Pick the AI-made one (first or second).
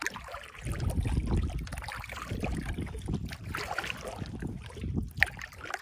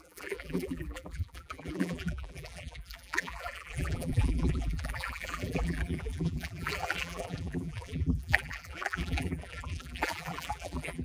second